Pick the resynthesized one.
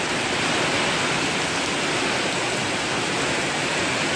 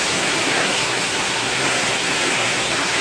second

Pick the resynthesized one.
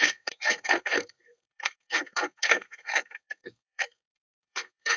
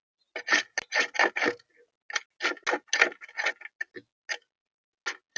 first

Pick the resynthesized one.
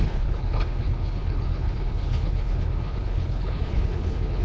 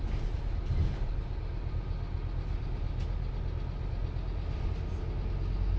first